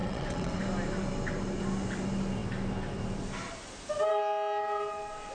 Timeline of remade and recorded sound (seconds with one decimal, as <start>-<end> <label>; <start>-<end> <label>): 0.0-0.6 remade; 0.6-5.3 recorded